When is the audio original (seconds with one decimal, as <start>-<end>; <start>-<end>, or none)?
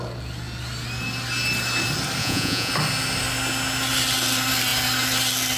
0.0-2.2; 2.7-5.6